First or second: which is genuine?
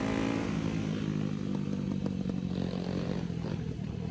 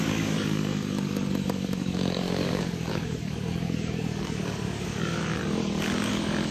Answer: first